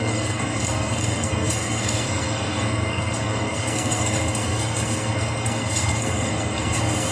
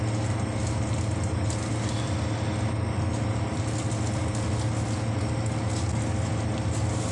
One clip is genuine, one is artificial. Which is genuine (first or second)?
second